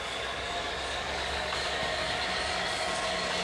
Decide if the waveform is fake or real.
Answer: fake